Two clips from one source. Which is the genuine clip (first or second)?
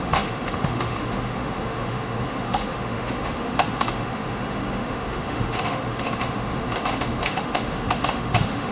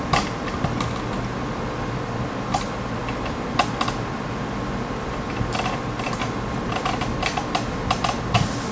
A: second